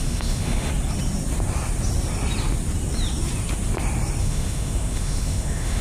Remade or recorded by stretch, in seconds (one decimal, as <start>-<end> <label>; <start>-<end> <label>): 0.0-0.7 remade; 0.7-4.2 recorded; 4.2-5.8 remade